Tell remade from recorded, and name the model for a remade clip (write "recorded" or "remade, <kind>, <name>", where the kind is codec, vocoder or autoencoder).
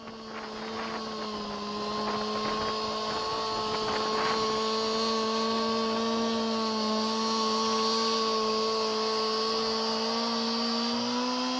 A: recorded